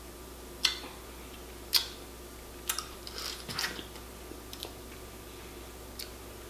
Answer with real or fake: real